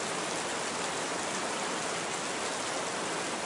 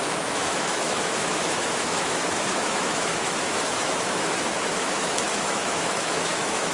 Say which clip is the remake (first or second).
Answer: second